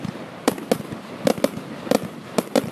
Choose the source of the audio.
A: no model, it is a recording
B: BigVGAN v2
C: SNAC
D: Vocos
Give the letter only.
A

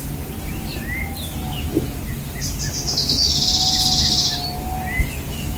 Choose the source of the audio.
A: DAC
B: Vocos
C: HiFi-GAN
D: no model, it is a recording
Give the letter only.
D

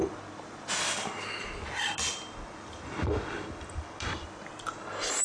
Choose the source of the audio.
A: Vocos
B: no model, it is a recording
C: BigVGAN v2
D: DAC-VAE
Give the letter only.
B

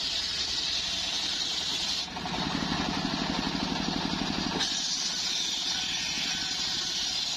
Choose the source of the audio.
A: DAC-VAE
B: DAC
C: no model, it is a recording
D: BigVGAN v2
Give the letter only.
C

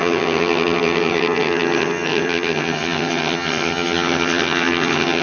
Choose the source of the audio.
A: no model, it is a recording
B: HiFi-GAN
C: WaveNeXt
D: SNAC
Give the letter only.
B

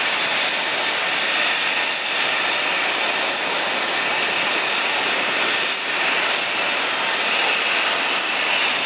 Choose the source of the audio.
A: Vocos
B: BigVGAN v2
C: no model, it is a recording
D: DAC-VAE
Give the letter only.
C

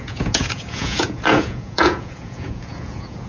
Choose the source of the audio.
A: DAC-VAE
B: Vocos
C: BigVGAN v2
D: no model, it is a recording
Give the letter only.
B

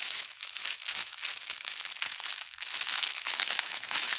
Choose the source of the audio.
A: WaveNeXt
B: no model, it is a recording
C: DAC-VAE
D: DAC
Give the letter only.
C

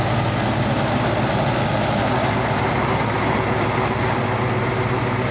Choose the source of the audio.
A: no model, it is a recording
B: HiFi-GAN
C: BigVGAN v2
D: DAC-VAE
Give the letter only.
A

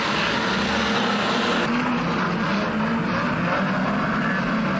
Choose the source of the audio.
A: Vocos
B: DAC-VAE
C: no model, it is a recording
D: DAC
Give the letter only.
C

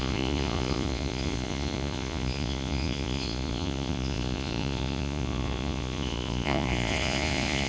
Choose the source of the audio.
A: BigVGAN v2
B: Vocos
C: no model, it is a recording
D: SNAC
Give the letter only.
B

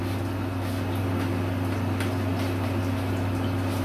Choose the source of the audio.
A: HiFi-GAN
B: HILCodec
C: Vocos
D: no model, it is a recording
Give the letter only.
D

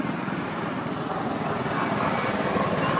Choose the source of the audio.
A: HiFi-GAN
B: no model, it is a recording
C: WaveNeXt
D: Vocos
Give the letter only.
B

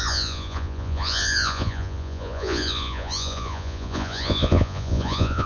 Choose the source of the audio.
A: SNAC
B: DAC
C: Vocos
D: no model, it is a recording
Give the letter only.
C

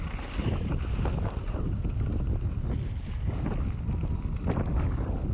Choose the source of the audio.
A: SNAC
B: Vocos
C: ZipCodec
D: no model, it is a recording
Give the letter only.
D